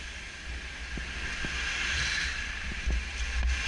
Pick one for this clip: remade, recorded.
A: recorded